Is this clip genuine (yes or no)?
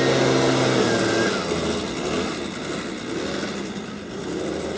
yes